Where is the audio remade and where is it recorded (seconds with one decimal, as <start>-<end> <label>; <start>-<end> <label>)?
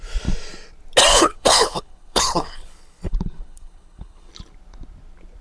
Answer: 0.0-1.1 recorded; 1.1-4.3 remade; 4.3-5.4 recorded